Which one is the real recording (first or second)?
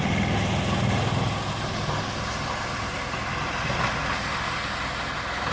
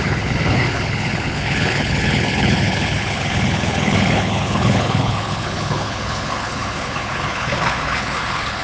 first